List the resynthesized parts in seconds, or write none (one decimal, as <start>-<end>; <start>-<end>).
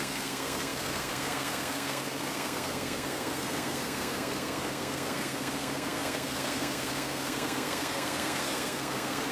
0.0-9.3